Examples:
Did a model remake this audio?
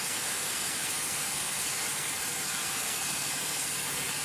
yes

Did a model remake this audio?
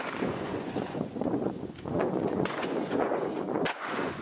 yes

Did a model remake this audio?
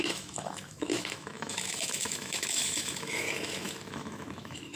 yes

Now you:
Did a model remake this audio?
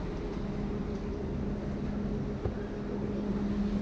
no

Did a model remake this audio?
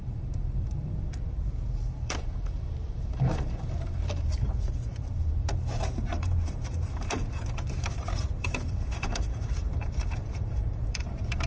yes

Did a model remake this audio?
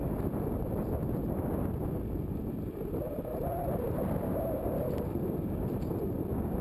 no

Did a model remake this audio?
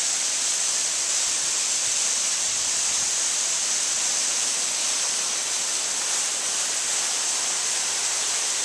no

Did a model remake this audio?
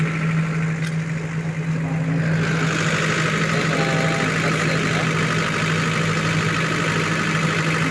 no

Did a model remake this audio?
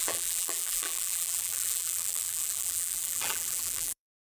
yes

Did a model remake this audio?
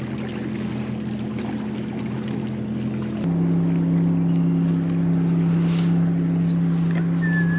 no